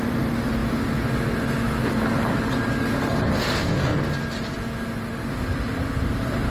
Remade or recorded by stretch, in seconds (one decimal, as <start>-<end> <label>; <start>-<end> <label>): 0.0-0.6 remade; 0.6-3.3 recorded; 3.3-3.9 remade; 3.9-5.3 recorded; 5.3-6.5 remade